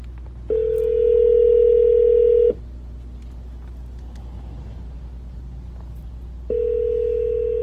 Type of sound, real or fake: real